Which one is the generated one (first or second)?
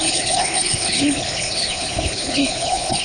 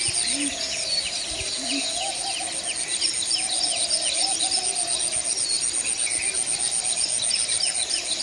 first